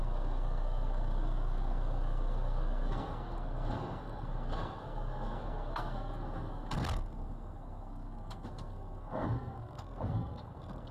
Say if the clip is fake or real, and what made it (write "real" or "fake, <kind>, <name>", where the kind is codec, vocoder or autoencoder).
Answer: fake, codec, SNAC